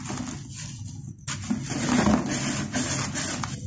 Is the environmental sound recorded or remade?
recorded